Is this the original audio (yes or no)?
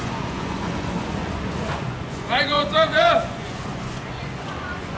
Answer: no